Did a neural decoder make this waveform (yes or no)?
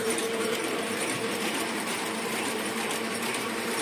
yes